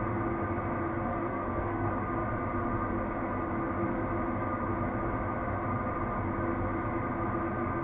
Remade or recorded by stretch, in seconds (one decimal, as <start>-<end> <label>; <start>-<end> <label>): 0.0-1.1 recorded; 1.1-1.9 remade; 1.9-7.8 recorded